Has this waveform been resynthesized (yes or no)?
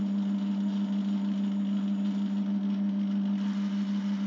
no